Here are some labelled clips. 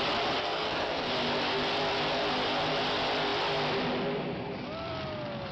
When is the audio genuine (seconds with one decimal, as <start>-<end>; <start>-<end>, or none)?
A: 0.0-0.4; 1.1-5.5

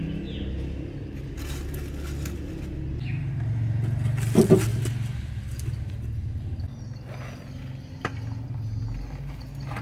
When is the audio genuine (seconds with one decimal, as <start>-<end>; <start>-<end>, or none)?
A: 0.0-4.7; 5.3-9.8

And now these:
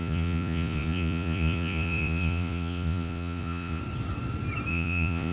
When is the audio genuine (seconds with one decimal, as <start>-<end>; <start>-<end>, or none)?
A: 3.8-4.7